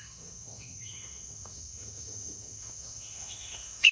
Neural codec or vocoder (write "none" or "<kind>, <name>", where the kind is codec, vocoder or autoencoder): autoencoder, DAC-VAE